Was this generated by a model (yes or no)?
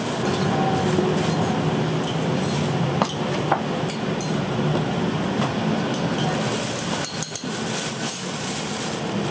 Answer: no